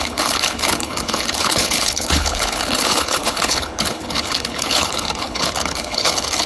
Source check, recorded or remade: remade